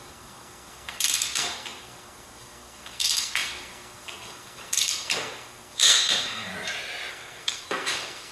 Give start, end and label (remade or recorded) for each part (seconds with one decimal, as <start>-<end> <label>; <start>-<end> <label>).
0.0-6.5 remade; 6.5-7.1 recorded; 7.1-8.3 remade